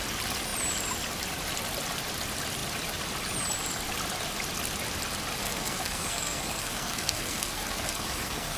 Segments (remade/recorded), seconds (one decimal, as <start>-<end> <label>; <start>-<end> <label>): 0.0-5.4 recorded; 5.4-8.6 remade